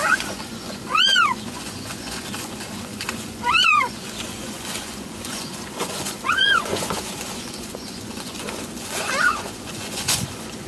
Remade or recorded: remade